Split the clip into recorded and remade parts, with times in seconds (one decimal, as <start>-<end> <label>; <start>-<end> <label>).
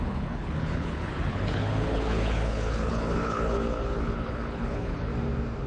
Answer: 0.0-5.1 remade; 5.1-5.7 recorded